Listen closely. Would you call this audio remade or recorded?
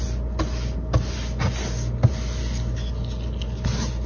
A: recorded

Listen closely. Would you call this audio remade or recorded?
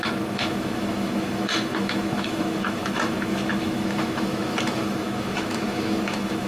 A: remade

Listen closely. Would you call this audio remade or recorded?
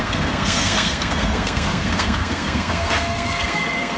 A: remade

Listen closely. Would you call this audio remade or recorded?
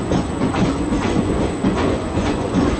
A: remade